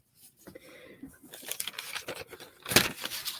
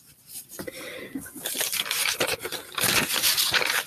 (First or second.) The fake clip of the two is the second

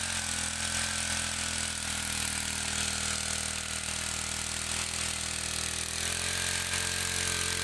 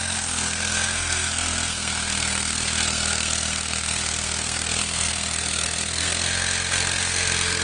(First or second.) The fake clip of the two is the second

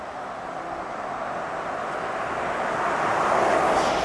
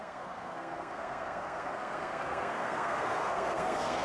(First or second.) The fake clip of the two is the second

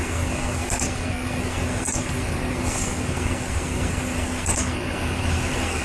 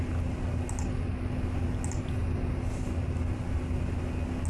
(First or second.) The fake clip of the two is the first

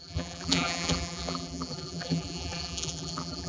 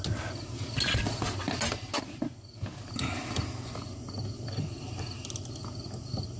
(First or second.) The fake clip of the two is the first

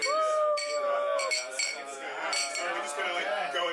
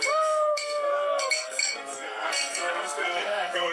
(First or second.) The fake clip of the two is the second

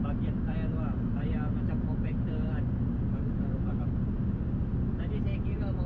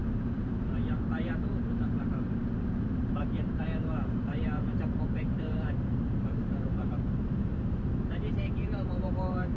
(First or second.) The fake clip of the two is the second